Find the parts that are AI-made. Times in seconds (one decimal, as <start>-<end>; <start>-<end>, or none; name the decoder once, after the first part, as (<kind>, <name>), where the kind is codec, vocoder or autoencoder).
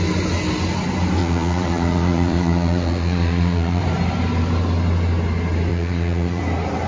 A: 1.2-3.8 (vocoder, Vocos); 5.7-6.4